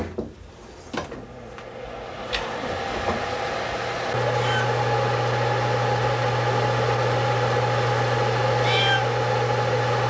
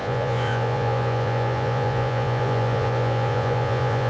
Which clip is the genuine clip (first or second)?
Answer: first